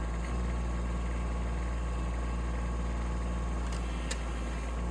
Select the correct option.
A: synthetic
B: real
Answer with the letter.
B